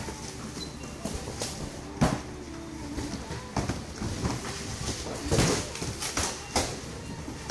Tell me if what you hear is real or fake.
real